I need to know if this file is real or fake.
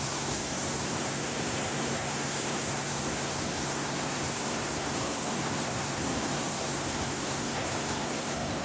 fake